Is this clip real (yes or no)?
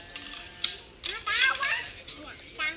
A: no